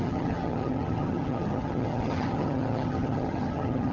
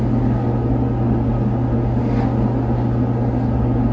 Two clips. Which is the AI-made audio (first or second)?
first